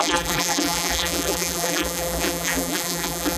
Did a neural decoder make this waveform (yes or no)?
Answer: yes